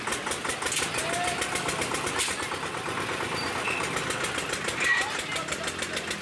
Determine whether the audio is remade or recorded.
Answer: recorded